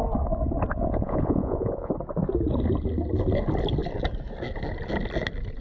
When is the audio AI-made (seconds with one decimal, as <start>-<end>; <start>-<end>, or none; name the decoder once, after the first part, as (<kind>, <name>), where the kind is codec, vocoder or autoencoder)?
0.7-1.9 (vocoder, Vocos)